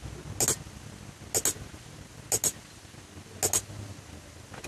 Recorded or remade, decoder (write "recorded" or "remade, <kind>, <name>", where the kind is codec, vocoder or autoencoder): recorded